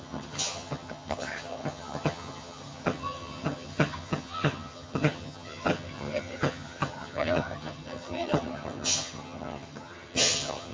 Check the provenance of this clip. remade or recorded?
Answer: remade